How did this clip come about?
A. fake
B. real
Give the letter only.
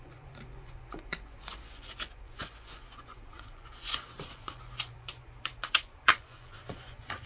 A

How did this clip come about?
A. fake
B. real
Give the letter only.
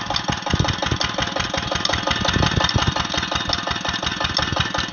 B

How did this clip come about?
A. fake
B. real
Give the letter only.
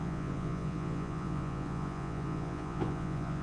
A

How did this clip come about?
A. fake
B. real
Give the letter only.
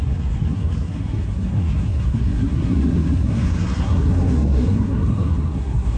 A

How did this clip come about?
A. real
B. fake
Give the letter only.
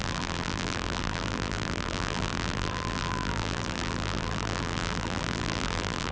B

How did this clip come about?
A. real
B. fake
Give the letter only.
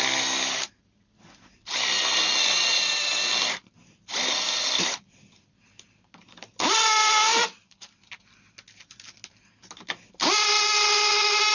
A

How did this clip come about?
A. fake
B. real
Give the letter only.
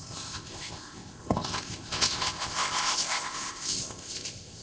A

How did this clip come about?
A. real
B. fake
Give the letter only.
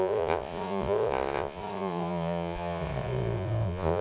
B